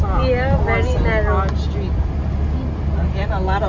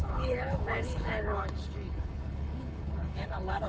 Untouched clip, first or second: first